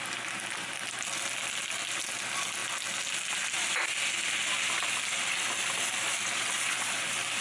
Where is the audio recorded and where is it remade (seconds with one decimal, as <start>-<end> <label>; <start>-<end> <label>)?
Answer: 0.0-7.4 recorded

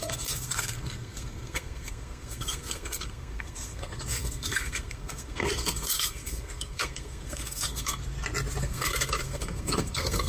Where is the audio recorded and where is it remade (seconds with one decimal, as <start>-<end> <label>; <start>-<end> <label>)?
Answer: 0.0-8.0 remade; 8.0-8.6 recorded; 8.6-10.3 remade